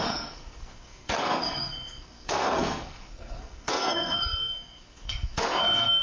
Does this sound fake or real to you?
fake